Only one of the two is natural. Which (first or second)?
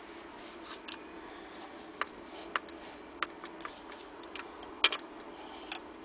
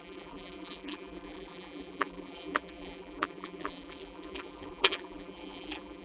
first